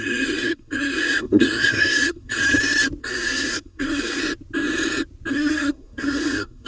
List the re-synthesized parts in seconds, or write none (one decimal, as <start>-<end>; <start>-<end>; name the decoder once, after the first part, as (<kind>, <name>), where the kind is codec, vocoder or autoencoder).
0.0-2.4 (codec, SNAC); 3.0-4.2; 5.3-6.7

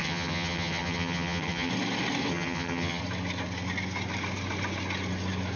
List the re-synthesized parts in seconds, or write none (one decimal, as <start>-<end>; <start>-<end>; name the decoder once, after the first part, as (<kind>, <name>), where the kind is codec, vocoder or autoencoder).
0.0-1.7 (vocoder, HiFi-GAN); 2.3-3.0

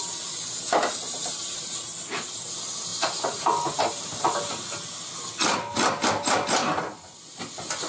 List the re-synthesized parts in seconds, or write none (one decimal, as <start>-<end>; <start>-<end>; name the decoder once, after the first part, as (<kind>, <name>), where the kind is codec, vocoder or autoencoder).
none

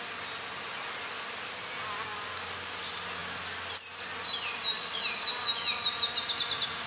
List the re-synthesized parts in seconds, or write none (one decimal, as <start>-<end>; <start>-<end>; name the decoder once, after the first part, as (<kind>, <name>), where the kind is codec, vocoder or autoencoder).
none

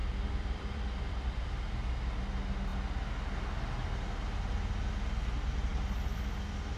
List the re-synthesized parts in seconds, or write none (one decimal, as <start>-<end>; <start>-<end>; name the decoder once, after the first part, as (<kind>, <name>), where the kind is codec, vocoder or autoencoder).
0.0-1.9 (vocoder, BigVGAN v2)

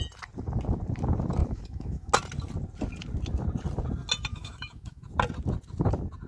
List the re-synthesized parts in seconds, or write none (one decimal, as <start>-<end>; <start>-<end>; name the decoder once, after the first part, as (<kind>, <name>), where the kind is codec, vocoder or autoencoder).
1.4-2.1 (autoencoder, DAC-VAE); 4.3-5.1

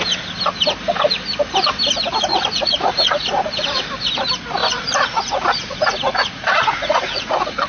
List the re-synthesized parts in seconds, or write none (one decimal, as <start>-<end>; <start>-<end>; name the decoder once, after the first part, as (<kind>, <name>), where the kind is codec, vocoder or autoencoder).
2.3-3.8 (vocoder, Vocos); 4.6-7.7

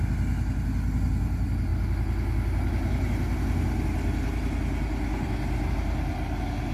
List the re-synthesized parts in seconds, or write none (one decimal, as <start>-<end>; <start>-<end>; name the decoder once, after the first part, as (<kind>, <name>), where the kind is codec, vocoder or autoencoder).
none